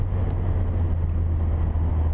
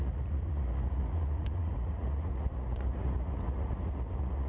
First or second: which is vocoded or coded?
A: second